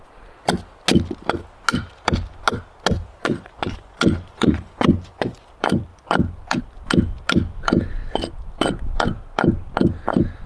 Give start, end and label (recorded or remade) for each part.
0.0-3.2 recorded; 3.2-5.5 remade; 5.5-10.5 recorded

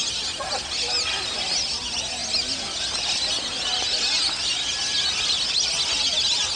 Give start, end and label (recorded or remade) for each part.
0.0-6.6 recorded

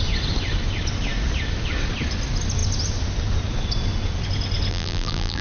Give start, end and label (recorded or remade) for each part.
0.0-4.7 recorded; 4.7-5.4 remade

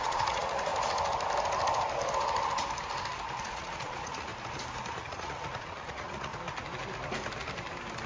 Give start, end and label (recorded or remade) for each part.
0.0-0.7 remade; 0.7-3.4 recorded; 3.4-4.3 remade; 4.3-4.9 recorded; 4.9-6.3 remade; 6.3-8.1 recorded

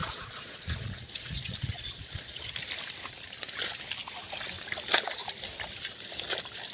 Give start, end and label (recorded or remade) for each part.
0.0-2.5 remade; 2.5-6.7 recorded

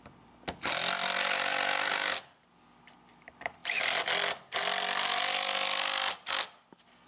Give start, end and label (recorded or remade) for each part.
0.0-7.1 recorded

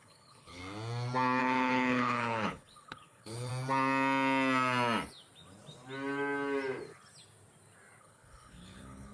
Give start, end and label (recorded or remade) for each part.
0.0-0.6 remade; 0.6-1.4 recorded; 1.4-3.5 remade; 3.5-8.0 recorded; 8.0-9.1 remade

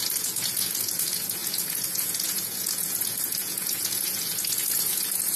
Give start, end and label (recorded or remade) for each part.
0.0-5.4 remade